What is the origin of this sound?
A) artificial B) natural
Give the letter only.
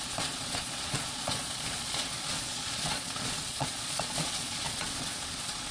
A